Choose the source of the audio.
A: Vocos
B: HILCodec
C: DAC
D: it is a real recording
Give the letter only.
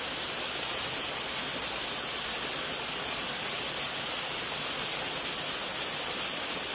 D